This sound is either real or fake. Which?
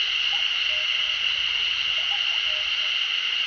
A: real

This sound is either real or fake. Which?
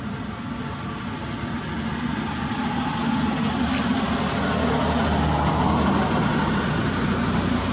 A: real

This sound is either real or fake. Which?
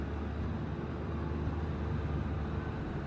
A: real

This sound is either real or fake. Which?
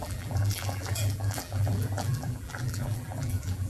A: fake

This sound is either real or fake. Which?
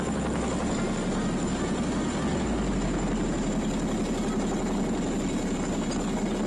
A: real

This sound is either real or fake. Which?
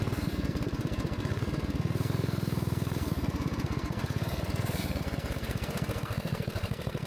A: fake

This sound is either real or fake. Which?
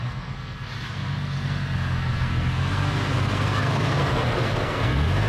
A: fake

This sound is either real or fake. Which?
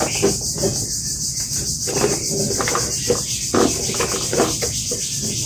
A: real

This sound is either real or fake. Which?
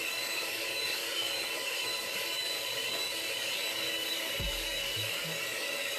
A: fake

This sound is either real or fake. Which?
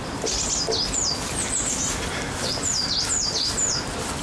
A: real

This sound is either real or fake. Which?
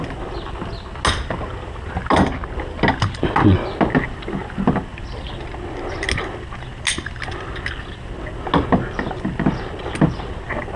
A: real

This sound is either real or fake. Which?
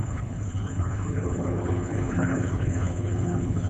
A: fake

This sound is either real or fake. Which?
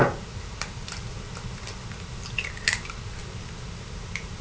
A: real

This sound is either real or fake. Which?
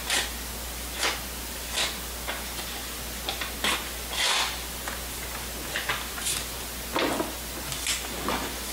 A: real